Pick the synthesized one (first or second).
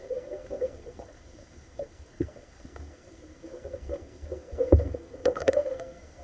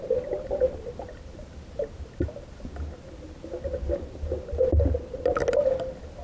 first